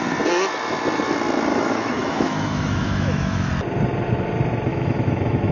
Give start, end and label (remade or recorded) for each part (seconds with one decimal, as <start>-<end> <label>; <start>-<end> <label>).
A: 0.0-1.5 recorded; 1.5-3.5 remade; 3.5-4.7 recorded; 4.7-5.5 remade